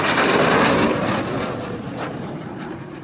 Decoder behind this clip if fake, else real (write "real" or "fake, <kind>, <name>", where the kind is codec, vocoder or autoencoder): fake, vocoder, BigVGAN v2